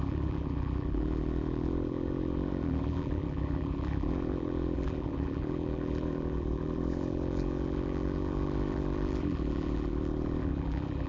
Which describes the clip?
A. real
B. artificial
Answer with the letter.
B